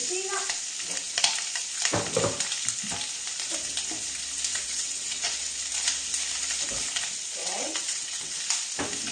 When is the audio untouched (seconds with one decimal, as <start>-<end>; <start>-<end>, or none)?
0.0-4.5; 5.6-7.4; 8.4-9.1